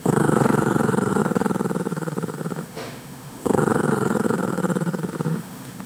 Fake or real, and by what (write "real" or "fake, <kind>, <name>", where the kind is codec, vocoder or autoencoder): fake, autoencoder, DAC-VAE